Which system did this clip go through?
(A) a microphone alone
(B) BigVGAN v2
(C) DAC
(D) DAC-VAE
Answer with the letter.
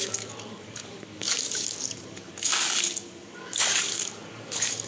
C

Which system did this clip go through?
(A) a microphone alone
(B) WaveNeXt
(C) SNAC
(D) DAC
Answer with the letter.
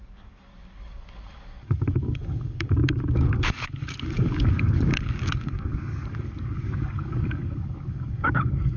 D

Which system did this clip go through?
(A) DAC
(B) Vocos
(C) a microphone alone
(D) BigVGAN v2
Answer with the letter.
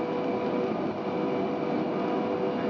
C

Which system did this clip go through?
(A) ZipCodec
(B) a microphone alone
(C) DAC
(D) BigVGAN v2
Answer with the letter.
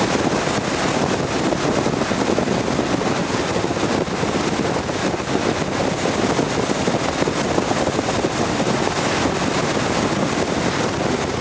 B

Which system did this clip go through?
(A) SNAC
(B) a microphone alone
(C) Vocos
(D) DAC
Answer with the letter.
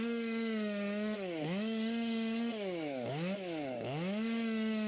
D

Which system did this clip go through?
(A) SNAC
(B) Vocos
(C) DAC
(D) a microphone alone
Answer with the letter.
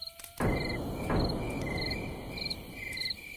D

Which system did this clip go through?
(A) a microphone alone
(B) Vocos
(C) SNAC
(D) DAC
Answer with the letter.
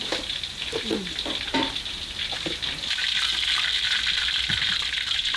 A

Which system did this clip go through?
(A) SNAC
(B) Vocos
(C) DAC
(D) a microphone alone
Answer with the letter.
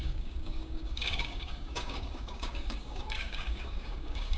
C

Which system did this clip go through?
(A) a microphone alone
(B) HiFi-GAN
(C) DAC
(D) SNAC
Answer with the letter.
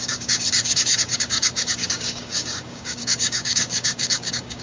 C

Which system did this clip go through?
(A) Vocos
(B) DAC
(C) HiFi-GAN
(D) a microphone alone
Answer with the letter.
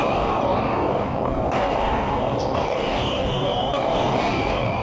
B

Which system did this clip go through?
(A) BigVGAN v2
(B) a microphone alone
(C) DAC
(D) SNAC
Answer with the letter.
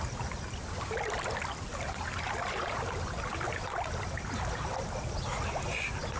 B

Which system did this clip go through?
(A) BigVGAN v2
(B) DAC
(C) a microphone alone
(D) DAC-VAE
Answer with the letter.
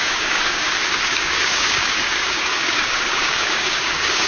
B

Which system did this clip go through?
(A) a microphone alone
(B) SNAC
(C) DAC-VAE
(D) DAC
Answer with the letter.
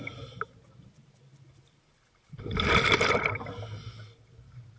A